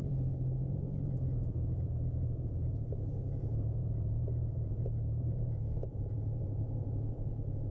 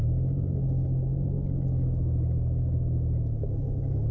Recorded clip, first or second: second